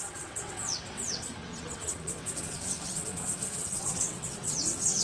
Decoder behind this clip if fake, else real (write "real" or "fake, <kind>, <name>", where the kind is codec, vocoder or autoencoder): fake, vocoder, WaveNeXt